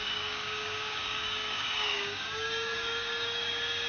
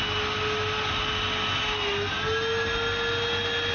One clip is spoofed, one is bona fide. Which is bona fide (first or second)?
second